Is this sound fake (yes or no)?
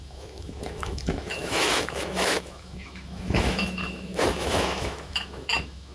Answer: yes